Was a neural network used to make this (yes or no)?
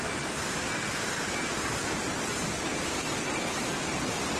no